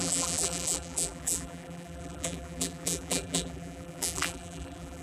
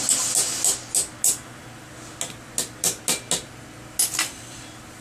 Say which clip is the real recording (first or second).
second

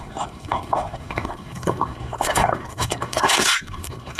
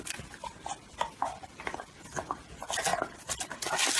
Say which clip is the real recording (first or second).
second